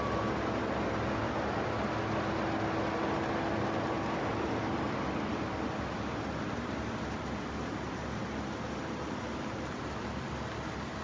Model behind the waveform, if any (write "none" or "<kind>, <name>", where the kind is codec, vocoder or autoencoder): none